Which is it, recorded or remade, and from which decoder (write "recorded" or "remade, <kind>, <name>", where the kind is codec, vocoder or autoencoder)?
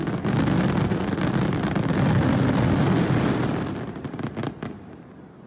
recorded